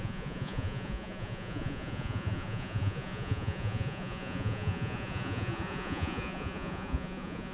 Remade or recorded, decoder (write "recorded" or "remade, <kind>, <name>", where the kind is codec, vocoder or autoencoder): remade, vocoder, Vocos